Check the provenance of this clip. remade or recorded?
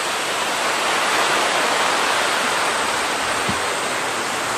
recorded